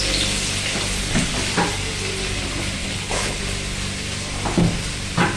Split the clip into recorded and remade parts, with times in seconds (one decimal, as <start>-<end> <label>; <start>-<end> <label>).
0.0-2.8 recorded; 2.8-3.4 remade; 3.4-5.4 recorded